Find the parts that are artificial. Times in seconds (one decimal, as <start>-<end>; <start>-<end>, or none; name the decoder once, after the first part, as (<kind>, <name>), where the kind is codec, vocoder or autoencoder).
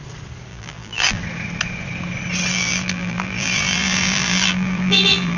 0.5-1.2 (vocoder, BigVGAN v2); 2.5-5.4